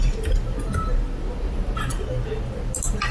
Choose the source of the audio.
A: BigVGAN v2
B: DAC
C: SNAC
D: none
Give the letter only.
D